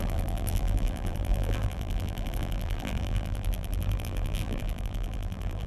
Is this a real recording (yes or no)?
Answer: no